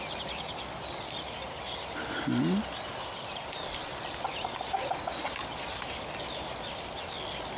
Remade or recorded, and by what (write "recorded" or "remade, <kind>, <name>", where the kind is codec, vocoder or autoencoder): recorded